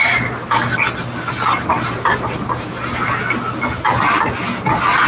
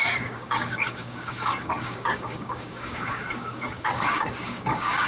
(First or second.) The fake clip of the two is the second